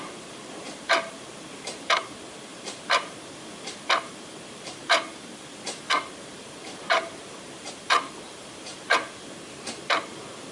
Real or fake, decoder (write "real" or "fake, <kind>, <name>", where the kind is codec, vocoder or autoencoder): fake, vocoder, BigVGAN v2